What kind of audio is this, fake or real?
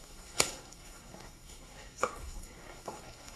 fake